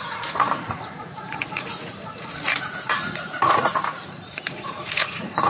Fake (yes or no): yes